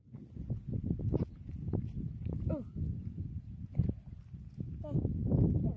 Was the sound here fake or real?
real